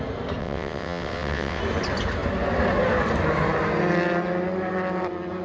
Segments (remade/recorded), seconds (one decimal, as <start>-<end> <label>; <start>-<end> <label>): 0.0-0.4 recorded; 0.4-1.6 remade; 1.6-5.4 recorded